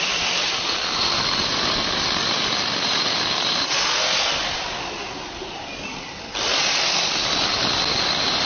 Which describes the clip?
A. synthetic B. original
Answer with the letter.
B